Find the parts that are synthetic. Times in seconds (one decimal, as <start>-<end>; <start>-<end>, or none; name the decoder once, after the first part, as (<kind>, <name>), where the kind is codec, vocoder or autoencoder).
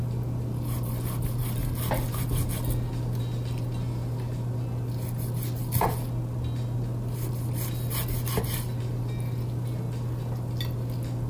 none